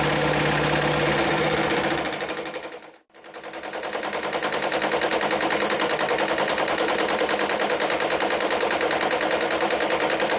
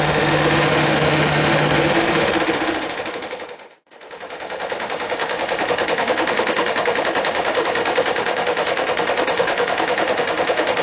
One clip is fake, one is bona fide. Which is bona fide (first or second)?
first